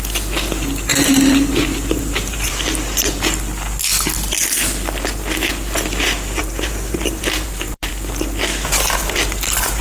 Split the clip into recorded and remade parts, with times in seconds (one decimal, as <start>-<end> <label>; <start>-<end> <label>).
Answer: 0.0-0.9 recorded; 0.9-2.5 remade; 2.5-6.4 recorded; 6.4-7.9 remade; 7.9-9.8 recorded